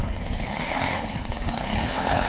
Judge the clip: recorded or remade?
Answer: remade